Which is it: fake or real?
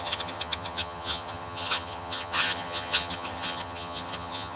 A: fake